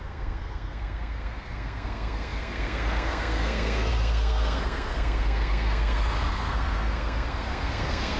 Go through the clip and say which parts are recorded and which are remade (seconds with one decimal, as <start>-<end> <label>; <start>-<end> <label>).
0.0-8.2 remade